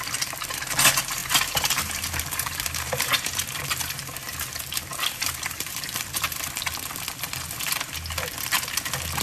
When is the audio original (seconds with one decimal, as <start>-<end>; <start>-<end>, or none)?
0.0-1.2; 6.4-9.2